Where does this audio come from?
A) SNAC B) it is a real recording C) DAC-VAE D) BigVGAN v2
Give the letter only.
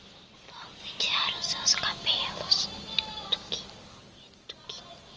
B